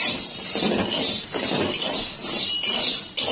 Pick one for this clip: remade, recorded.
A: recorded